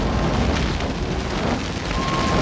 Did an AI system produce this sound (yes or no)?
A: no